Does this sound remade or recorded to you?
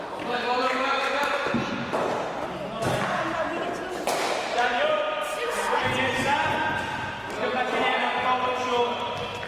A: recorded